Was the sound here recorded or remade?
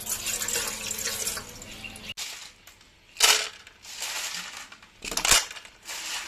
recorded